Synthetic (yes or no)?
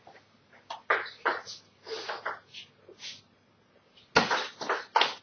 no